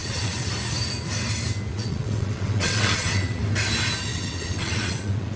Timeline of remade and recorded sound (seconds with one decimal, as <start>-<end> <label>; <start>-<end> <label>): 0.0-0.5 remade; 0.5-1.7 recorded; 1.7-3.4 remade; 3.4-4.1 recorded; 4.1-5.4 remade